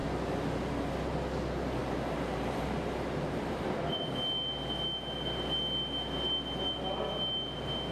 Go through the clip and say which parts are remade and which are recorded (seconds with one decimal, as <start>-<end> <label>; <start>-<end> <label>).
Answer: 0.0-0.6 remade; 0.6-1.8 recorded; 1.8-3.4 remade; 3.4-7.9 recorded

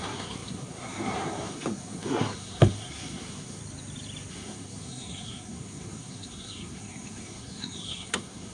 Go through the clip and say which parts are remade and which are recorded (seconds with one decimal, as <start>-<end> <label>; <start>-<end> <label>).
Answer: 0.0-3.6 remade; 3.6-4.3 recorded; 4.3-8.5 remade

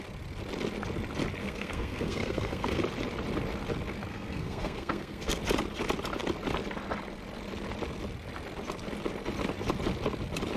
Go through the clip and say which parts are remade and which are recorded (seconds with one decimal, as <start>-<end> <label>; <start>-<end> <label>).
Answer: 0.0-1.4 recorded; 1.4-2.8 remade; 2.8-4.1 recorded; 4.1-5.4 remade; 5.4-10.6 recorded

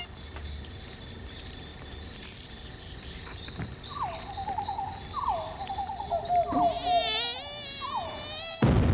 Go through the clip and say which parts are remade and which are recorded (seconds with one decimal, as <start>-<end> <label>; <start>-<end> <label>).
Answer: 0.0-8.9 recorded